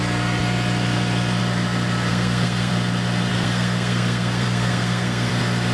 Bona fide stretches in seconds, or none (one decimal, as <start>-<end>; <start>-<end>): 0.0-2.1; 2.7-3.3; 5.3-5.7